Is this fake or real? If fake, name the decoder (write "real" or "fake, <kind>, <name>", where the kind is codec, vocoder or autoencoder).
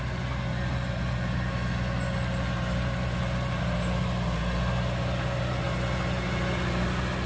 real